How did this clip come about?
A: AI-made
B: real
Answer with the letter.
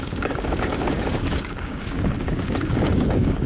A